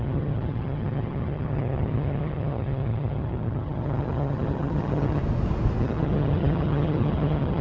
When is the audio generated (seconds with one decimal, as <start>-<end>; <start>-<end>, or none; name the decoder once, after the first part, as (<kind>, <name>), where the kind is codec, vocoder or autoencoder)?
0.0-5.2 (vocoder, HiFi-GAN); 5.8-7.6